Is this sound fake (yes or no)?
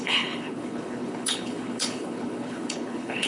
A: yes